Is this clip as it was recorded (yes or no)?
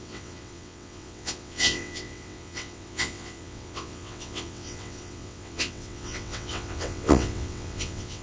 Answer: no